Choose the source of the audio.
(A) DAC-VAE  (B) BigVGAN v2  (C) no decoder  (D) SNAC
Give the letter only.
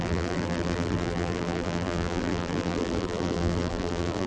B